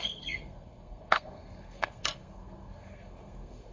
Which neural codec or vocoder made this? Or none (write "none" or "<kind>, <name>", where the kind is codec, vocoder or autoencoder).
codec, SNAC